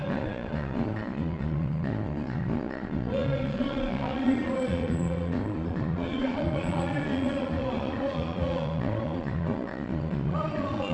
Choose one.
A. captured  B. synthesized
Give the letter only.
B